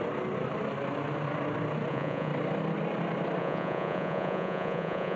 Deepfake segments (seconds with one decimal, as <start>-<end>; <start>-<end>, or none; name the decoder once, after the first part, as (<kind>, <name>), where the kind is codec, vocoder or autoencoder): 1.9-2.3 (vocoder, Vocos); 3.4-5.2